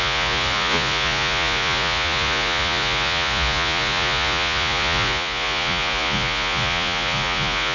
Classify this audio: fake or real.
fake